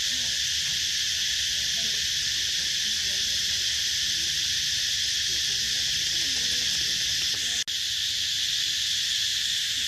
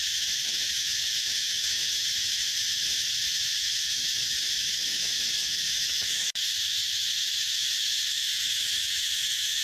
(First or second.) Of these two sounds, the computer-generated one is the second